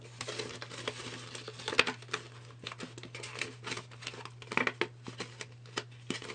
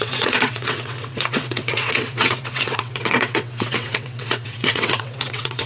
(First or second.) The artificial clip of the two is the second